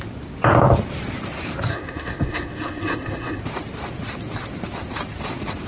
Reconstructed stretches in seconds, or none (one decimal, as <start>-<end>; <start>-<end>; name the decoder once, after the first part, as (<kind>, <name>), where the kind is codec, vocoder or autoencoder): 1.7-3.4 (codec, SNAC)